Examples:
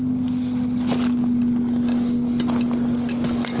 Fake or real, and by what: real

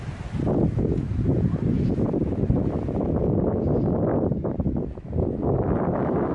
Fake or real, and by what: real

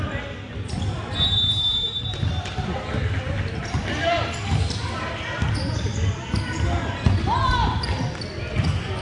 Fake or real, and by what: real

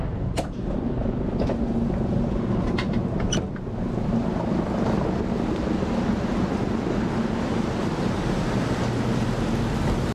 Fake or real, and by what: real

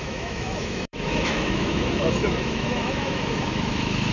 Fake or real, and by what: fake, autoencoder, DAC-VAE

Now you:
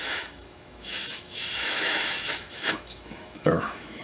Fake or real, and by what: fake, autoencoder, DAC-VAE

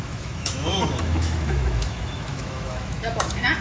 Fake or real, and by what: fake, autoencoder, DAC-VAE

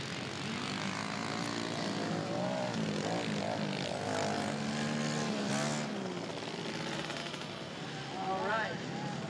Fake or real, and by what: real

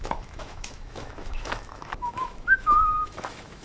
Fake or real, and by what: fake, autoencoder, DAC-VAE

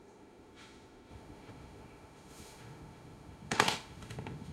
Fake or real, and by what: fake, autoencoder, DAC-VAE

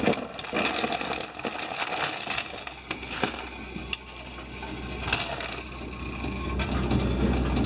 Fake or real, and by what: real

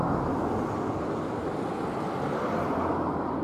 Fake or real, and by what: real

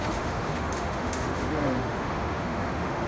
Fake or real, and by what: fake, autoencoder, DAC-VAE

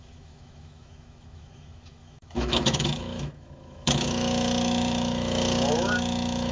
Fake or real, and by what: fake, autoencoder, DAC-VAE